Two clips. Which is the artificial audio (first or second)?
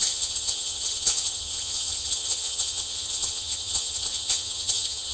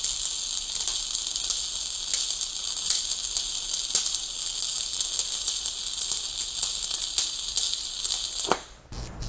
first